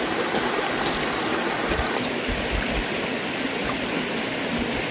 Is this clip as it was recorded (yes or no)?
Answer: yes